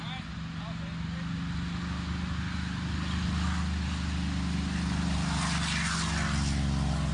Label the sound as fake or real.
real